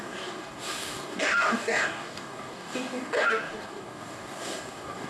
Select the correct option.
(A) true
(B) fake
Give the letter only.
B